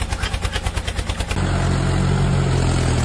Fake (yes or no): no